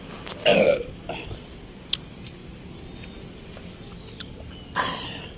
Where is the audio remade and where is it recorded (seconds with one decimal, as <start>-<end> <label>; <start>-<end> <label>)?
0.0-5.4 recorded